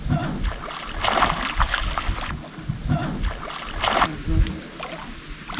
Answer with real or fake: real